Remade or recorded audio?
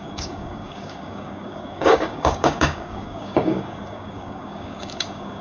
remade